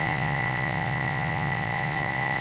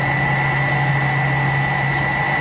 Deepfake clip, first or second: first